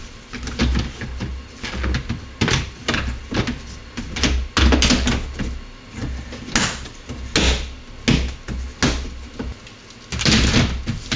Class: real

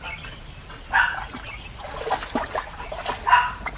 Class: real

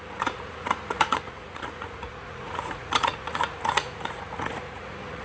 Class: fake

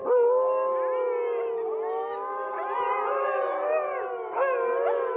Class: real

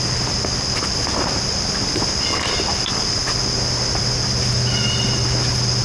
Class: real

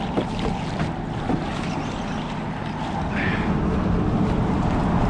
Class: real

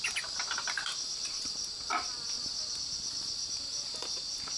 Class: real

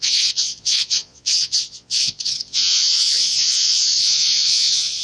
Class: fake